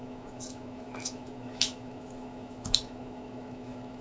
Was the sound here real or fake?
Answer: fake